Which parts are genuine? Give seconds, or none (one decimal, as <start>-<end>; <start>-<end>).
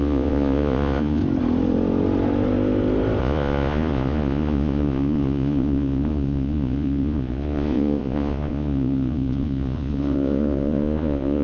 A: 1.2-3.2